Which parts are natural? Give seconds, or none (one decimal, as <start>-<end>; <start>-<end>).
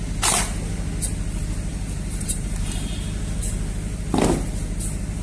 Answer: 0.0-1.7; 2.9-5.2